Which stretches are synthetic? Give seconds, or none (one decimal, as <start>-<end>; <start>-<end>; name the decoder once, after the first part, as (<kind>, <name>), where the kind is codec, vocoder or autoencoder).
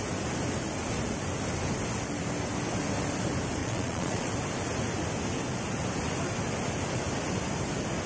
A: 3.6-4.3 (vocoder, Vocos)